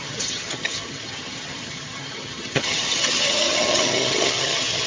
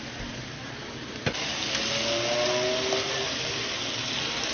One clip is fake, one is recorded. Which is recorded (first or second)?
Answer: second